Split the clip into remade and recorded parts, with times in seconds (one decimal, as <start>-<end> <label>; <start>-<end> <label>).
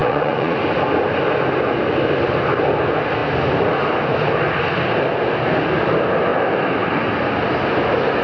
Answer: 0.0-0.6 remade; 0.6-8.2 recorded